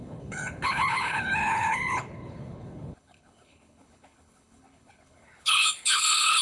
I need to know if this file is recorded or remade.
remade